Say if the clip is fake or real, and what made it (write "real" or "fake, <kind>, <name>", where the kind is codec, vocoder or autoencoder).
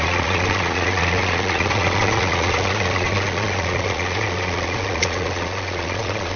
fake, vocoder, Vocos